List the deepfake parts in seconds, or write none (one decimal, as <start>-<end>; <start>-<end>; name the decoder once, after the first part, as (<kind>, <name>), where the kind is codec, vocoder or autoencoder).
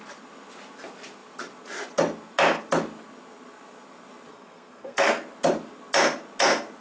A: 4.3-5.2 (codec, SNAC)